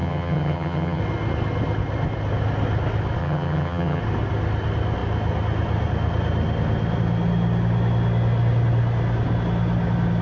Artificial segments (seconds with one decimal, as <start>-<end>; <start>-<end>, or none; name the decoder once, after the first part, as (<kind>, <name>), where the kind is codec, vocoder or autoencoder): 0.0-1.0 (vocoder, HiFi-GAN); 3.2-4.0